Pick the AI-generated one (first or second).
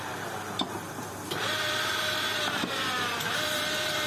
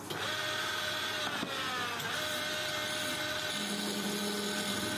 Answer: first